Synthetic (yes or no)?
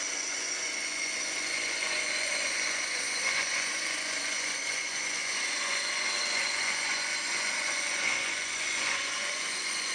yes